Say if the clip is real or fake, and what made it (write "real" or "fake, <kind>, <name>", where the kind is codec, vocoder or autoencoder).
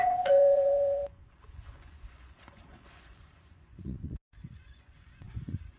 fake, vocoder, Vocos